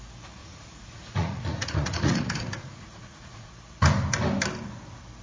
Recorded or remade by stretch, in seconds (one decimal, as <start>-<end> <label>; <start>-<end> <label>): 0.0-0.4 recorded; 0.4-3.5 remade; 3.5-5.2 recorded